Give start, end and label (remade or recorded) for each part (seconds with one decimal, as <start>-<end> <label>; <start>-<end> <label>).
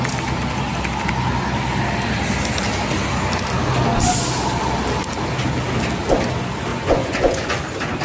0.0-6.7 recorded; 6.7-7.6 remade; 7.6-8.0 recorded